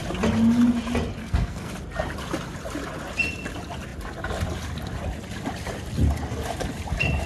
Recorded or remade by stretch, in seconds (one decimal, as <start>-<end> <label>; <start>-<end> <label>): 0.0-1.2 recorded; 1.2-1.7 remade; 1.7-7.3 recorded